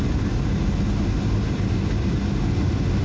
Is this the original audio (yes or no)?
yes